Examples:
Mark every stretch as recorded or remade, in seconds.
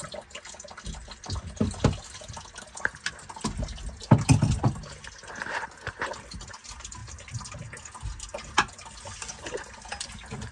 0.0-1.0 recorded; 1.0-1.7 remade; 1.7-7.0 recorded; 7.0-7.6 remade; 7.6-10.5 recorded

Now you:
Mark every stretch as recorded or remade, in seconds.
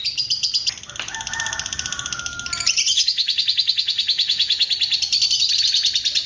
0.0-2.9 recorded; 2.9-4.7 remade; 4.7-6.3 recorded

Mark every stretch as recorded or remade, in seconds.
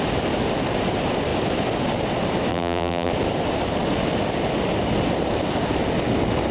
0.0-2.5 recorded; 2.5-3.1 remade; 3.1-6.5 recorded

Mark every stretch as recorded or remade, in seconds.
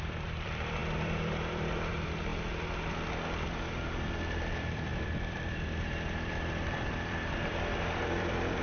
0.0-2.3 remade; 2.3-4.4 recorded; 4.4-8.6 remade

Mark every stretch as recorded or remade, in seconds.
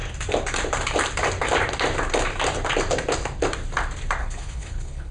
0.0-4.2 recorded; 4.2-5.1 remade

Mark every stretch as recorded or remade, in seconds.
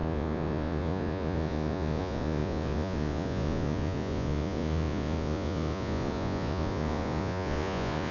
0.0-8.1 remade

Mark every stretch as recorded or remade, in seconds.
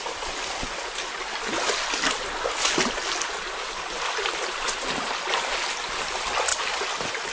0.0-7.3 recorded